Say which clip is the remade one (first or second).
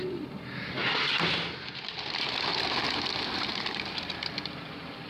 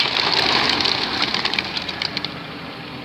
first